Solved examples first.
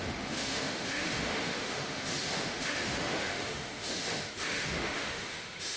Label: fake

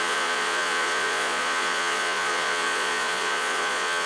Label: fake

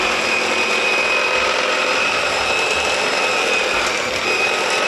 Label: real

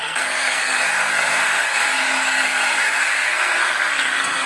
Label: fake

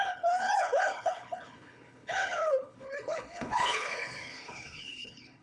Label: fake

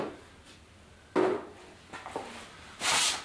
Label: real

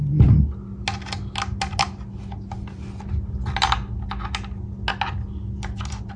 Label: real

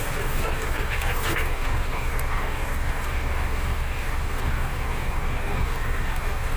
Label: fake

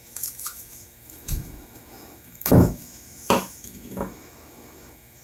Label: fake